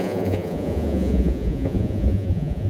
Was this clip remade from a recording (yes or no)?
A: yes